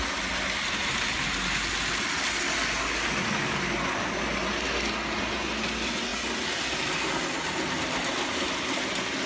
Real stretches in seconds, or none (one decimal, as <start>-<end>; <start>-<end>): 0.0-9.3